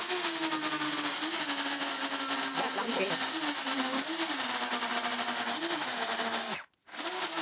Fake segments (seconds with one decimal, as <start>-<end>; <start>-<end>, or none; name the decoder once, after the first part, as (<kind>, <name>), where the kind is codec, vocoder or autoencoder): none